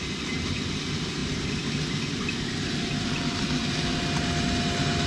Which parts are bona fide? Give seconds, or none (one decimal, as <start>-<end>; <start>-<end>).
0.0-5.1